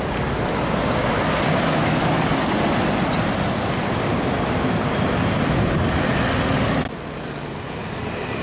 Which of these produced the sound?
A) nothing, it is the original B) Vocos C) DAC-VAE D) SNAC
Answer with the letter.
A